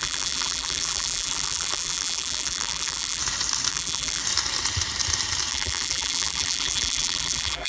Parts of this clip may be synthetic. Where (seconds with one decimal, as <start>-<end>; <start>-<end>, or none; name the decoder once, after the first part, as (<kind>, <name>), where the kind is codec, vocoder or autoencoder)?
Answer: 0.0-3.2 (vocoder, BigVGAN v2); 3.7-4.2; 5.5-7.7